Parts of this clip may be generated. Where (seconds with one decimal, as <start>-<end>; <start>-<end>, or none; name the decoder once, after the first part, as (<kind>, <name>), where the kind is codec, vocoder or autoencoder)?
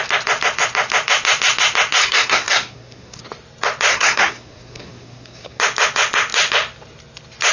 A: 2.0-3.2 (codec, SNAC); 3.9-5.6